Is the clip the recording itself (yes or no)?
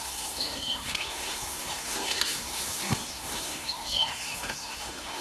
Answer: no